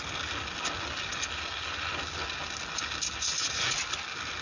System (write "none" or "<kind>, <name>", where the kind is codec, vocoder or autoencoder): none